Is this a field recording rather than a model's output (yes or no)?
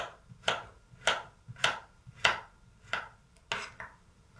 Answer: yes